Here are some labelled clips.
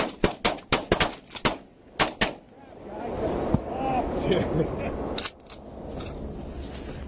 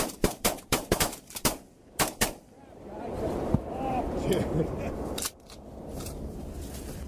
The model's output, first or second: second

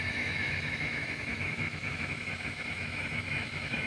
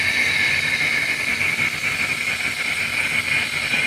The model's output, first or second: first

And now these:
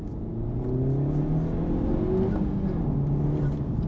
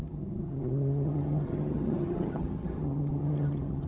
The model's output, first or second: second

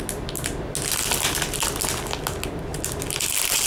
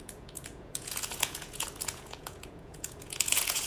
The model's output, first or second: second